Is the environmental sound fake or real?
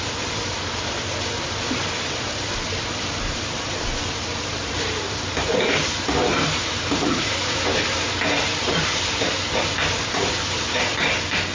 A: fake